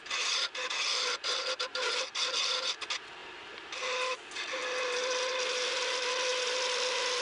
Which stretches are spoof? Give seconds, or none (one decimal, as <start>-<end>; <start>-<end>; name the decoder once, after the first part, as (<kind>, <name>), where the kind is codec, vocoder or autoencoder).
3.2-3.8 (vocoder, BigVGAN v2)